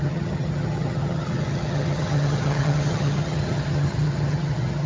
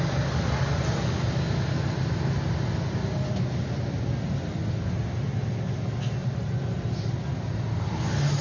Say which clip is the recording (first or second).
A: second